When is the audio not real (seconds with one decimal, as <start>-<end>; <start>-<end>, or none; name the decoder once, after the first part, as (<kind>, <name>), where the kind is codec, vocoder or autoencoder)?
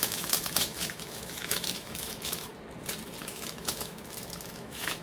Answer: 0.0-2.5 (autoencoder, DAC-VAE); 3.2-5.0